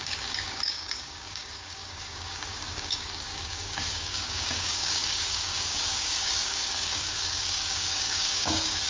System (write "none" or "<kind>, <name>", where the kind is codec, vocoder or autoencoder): codec, DAC